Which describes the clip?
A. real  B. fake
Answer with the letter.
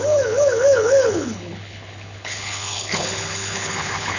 B